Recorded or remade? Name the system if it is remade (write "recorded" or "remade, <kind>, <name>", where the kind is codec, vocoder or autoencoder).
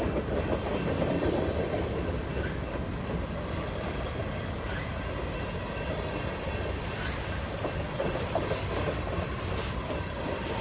recorded